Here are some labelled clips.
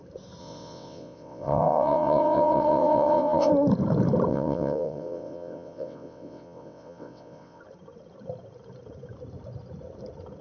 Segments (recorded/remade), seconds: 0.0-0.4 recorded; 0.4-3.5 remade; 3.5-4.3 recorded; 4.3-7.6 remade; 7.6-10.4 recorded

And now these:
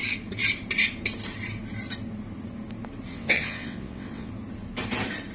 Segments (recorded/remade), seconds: 0.0-3.1 recorded; 3.1-4.3 remade; 4.3-5.3 recorded

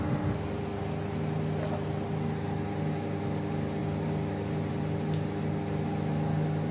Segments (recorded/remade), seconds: 0.0-6.7 recorded

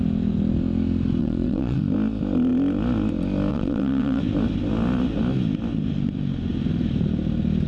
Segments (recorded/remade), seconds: 0.0-1.2 recorded; 1.2-1.8 remade; 1.8-3.5 recorded; 3.5-4.2 remade; 4.2-7.7 recorded

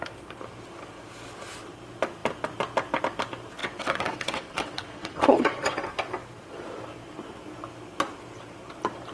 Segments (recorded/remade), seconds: 0.0-3.6 recorded; 3.6-5.9 remade; 5.9-9.1 recorded